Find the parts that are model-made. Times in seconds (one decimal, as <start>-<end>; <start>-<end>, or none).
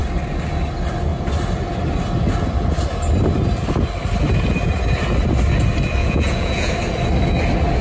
6.0-6.7